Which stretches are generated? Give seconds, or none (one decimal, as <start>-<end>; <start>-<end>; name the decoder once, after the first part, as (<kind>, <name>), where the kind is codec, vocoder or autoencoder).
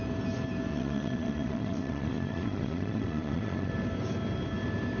0.7-3.7 (vocoder, Vocos)